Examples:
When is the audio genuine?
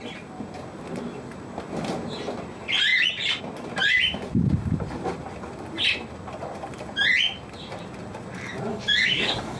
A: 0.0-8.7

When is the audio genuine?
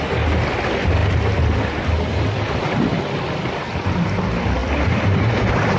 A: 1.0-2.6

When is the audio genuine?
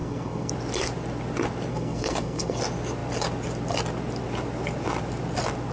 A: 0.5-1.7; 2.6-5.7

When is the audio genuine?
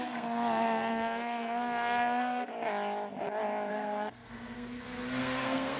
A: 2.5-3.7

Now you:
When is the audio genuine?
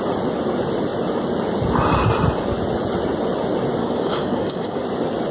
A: 0.0-3.8; 4.8-5.3